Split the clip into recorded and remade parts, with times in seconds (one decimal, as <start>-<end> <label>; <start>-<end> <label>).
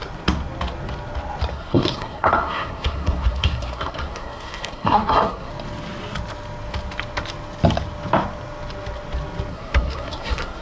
0.0-1.5 recorded; 1.5-5.5 remade; 5.5-9.5 recorded; 9.5-10.6 remade